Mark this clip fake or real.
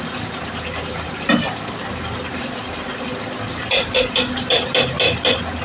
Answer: real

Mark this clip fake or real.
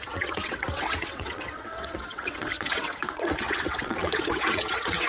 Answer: fake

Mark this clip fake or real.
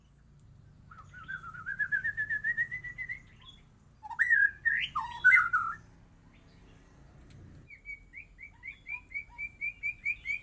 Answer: real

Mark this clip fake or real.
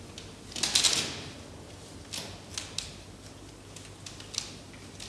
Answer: real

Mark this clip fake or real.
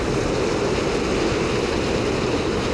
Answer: real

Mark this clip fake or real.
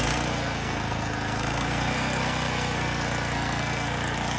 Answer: fake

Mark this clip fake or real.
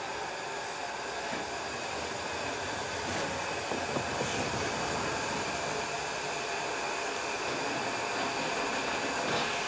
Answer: real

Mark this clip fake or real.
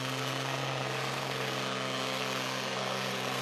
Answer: fake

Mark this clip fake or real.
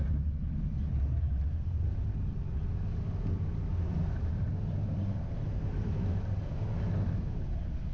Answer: real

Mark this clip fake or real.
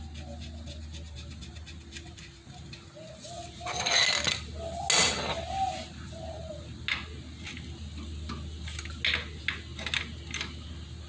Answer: real